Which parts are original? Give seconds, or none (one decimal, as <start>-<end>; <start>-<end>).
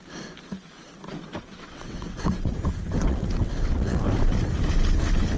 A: 0.0-1.3; 2.6-3.0; 4.0-5.4